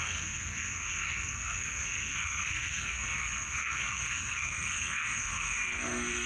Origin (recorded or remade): remade